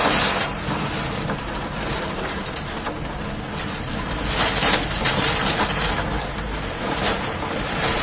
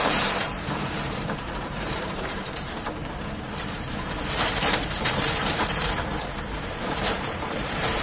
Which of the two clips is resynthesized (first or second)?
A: second